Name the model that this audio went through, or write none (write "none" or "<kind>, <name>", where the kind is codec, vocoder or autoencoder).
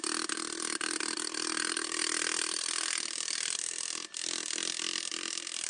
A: none